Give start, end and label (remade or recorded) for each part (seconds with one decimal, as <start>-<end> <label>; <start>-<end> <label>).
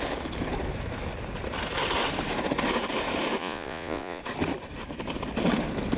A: 0.0-3.4 recorded; 3.4-4.2 remade; 4.2-6.0 recorded